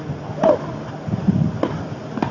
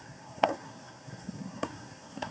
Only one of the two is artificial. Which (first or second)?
second